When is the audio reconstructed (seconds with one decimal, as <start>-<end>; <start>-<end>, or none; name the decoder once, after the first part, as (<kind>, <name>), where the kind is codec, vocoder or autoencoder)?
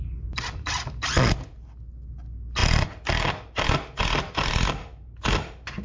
none